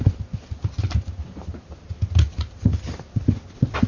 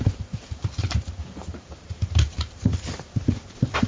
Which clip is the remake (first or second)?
second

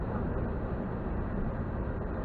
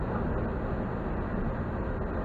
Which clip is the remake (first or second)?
first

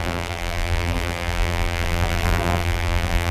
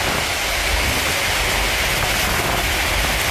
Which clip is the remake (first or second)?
first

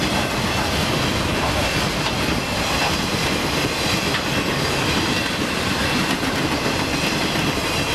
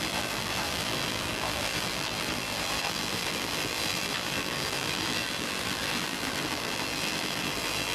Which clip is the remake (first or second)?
second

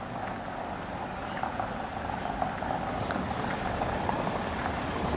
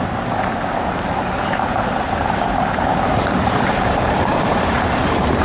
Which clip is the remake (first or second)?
second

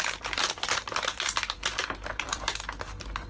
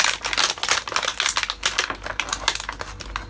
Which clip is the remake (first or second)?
first